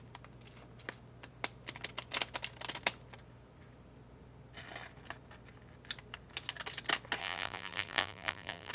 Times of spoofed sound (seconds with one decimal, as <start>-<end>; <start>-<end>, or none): 7.2-8.7